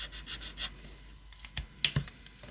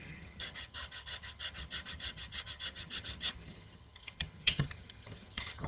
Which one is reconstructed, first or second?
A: second